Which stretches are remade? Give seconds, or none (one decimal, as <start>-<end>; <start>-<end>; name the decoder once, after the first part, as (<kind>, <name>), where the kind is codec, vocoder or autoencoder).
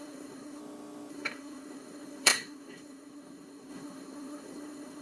0.0-0.6 (codec, SNAC); 1.1-5.0